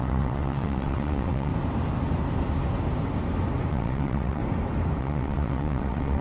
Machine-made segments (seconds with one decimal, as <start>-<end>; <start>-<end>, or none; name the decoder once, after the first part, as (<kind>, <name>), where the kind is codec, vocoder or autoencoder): 0.0-1.5 (vocoder, WaveNeXt); 3.7-4.4; 5.0-6.2